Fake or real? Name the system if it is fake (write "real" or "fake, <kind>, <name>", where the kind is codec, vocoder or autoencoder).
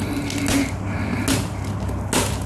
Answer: real